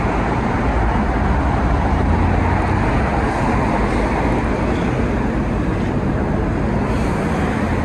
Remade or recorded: recorded